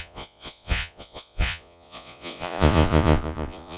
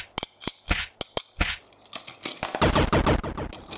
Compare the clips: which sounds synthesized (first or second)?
first